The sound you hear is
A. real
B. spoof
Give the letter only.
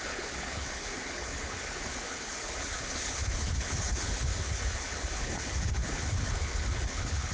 B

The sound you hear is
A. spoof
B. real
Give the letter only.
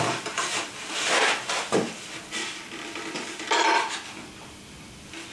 B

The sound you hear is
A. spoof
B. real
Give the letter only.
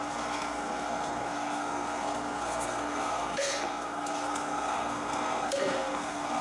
A